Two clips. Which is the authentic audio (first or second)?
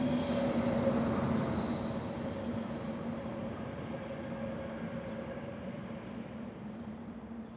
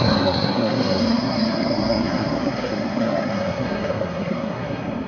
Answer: first